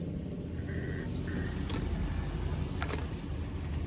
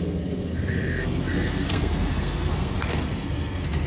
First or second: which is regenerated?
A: second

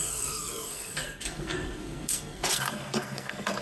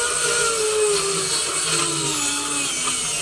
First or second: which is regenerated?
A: first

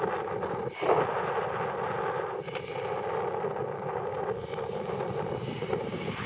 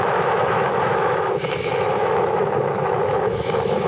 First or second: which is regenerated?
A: second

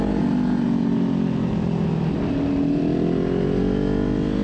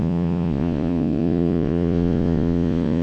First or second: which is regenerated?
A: second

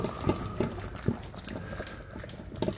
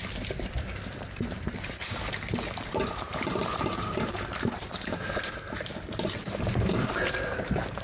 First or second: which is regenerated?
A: second